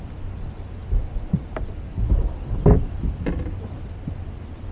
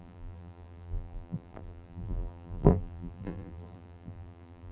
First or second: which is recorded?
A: first